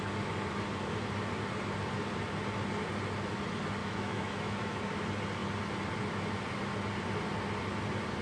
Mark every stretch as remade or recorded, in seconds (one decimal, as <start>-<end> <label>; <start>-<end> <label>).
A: 0.0-3.8 recorded; 3.8-4.9 remade; 4.9-8.2 recorded